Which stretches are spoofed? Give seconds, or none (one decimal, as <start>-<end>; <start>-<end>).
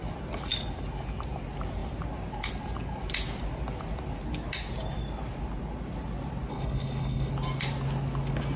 6.5-7.3